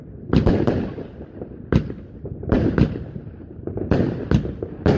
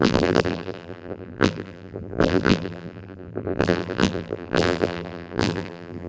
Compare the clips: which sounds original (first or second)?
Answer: first